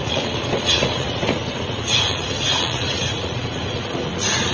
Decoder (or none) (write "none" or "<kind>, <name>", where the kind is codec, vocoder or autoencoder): vocoder, Vocos